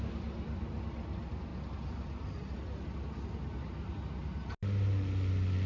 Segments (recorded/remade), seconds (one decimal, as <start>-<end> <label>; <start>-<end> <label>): 0.0-5.7 recorded